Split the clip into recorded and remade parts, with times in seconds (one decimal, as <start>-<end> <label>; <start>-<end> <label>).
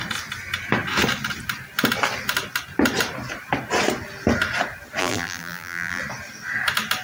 0.0-5.0 recorded; 5.0-6.0 remade; 6.0-7.0 recorded